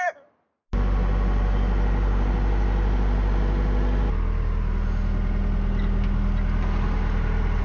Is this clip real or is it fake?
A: real